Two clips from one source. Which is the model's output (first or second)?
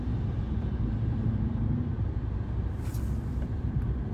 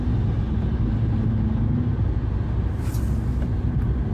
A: first